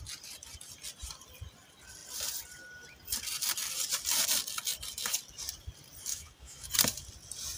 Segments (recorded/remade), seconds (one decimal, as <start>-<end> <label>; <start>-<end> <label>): 0.0-6.1 recorded; 6.1-6.7 remade; 6.7-7.6 recorded